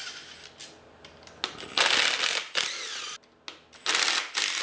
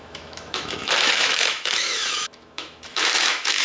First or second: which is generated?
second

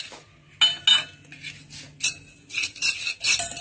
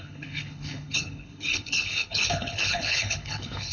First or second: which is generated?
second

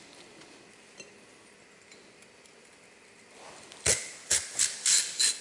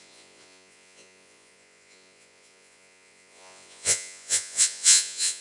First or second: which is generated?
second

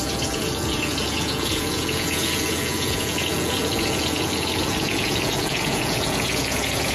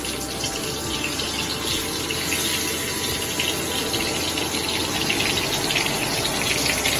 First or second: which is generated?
first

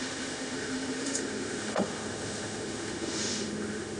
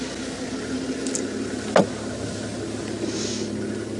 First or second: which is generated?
first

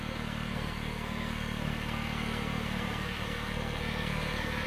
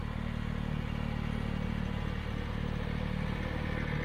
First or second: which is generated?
first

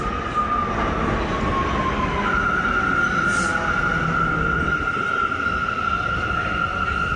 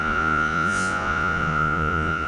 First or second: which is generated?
second